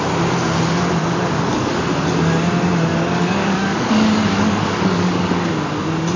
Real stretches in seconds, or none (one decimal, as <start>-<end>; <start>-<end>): 0.0-1.0; 1.7-2.9; 5.5-6.2